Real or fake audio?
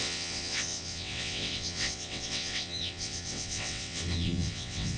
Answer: fake